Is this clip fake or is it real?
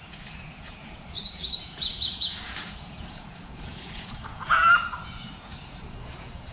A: fake